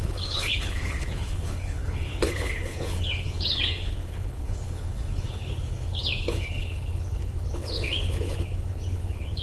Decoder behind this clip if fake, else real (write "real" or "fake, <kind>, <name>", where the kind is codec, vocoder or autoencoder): fake, codec, HILCodec